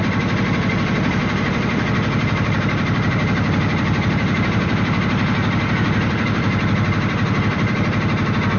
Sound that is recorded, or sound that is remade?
remade